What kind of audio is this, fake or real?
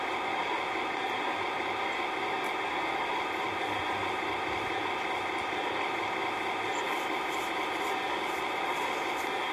real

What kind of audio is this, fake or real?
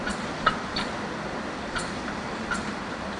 real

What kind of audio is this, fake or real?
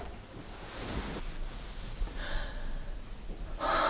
real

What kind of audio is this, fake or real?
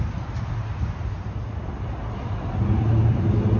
real